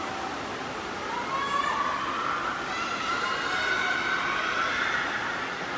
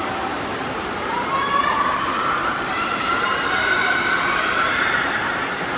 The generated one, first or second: second